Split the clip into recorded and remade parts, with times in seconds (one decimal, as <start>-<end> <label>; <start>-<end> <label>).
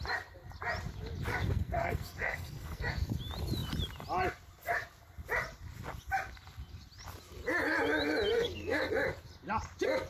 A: 0.0-1.3 recorded; 1.3-3.2 remade; 3.2-8.3 recorded; 8.3-8.9 remade; 8.9-10.1 recorded